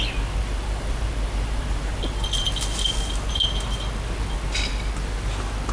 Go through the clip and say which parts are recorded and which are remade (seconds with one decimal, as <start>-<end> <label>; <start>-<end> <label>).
0.0-0.4 recorded; 0.4-2.0 remade; 2.0-5.7 recorded